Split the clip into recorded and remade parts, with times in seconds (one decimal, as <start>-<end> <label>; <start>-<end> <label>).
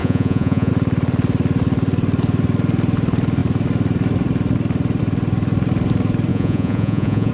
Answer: 0.0-0.7 remade; 0.7-6.3 recorded; 6.3-7.3 remade